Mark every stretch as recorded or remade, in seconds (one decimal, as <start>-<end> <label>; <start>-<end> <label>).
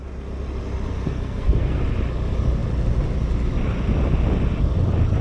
0.0-0.9 recorded; 0.9-1.8 remade; 1.8-5.2 recorded